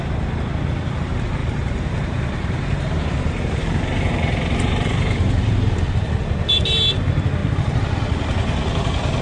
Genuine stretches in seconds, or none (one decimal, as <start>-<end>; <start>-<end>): 0.0-1.4; 6.1-7.4; 7.9-9.2